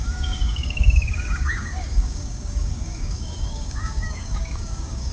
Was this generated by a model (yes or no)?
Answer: yes